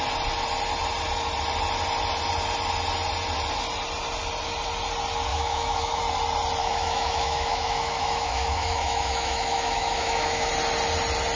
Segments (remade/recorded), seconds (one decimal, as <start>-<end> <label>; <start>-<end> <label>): 0.0-5.3 recorded; 5.3-6.0 remade; 6.0-6.6 recorded; 6.6-10.5 remade; 10.5-11.4 recorded